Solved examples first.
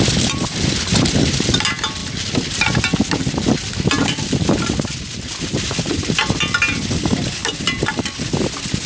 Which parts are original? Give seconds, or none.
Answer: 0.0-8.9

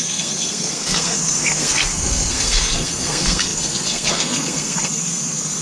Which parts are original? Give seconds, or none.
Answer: none